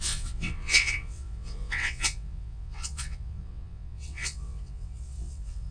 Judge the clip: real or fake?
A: fake